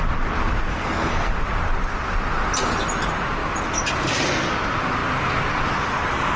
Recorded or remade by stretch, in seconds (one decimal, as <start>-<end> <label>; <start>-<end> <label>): 0.0-0.7 recorded; 0.7-1.3 remade; 1.3-6.4 recorded